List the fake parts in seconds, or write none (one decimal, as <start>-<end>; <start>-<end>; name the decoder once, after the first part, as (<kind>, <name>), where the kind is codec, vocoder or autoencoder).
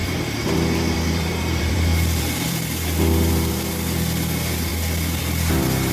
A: 0.0-3.5 (vocoder, BigVGAN v2)